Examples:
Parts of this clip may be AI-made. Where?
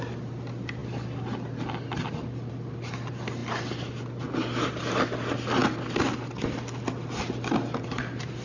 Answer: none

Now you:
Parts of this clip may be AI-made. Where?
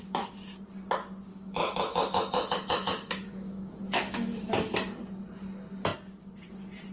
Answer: 1.3-4.5 (autoencoder, DAC-VAE)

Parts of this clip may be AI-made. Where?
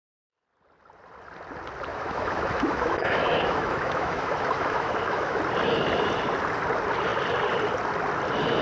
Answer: 1.9-5.4 (autoencoder, DAC-VAE)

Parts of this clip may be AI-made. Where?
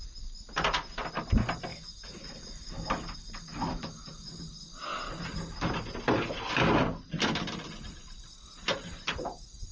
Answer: 1.7-4.4 (autoencoder, DAC-VAE)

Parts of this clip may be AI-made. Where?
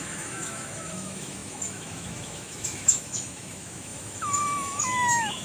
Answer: 0.0-5.4 (autoencoder, DAC-VAE)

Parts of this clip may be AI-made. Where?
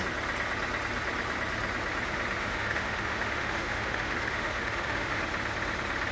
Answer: 2.4-5.2 (autoencoder, DAC-VAE)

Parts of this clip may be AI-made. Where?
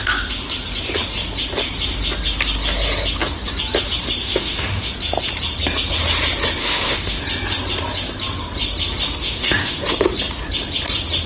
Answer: 4.2-4.9 (autoencoder, DAC-VAE); 6.6-7.2; 9.2-9.8